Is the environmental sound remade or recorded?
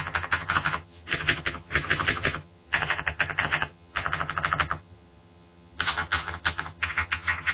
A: remade